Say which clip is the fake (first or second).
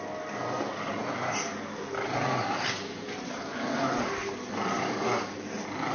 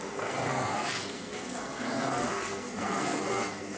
second